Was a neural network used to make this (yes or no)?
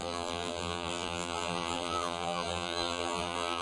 yes